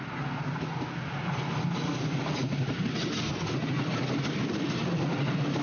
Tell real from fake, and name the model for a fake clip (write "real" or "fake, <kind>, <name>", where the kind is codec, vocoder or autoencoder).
real